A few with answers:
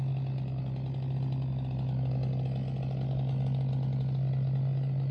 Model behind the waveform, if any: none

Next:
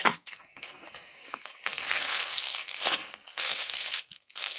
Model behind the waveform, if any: codec, SNAC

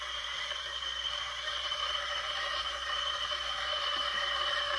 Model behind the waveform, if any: vocoder, BigVGAN v2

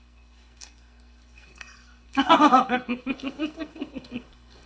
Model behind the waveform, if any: codec, SNAC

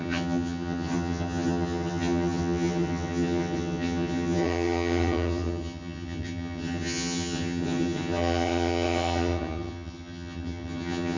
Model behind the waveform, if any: vocoder, HiFi-GAN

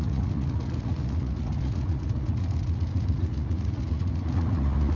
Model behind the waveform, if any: vocoder, Vocos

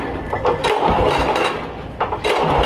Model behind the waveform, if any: none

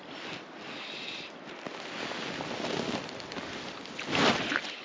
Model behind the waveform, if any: none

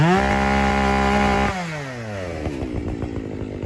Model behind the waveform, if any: none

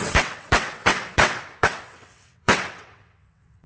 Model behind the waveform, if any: vocoder, WaveNeXt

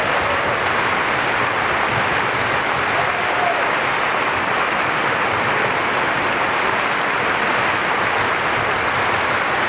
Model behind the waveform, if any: none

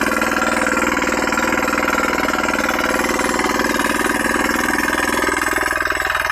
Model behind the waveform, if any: none